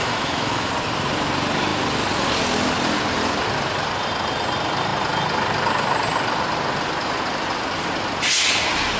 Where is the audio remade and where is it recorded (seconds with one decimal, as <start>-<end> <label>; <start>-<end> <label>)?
0.0-0.7 remade; 0.7-9.0 recorded